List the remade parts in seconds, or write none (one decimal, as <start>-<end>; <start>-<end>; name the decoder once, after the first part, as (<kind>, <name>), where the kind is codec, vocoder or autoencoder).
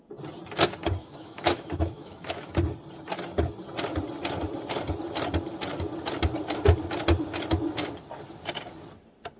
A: 1.0-2.5 (autoencoder, DAC-VAE)